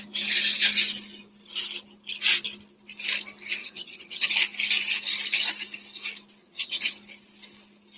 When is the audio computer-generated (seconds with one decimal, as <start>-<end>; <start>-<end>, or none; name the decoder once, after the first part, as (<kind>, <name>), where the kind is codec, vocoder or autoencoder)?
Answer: 3.6-4.3 (vocoder, HiFi-GAN); 6.4-6.9